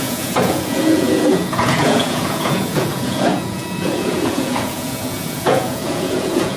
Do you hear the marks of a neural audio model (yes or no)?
yes